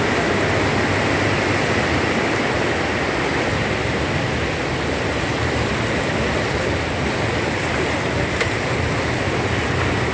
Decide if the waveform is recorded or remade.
recorded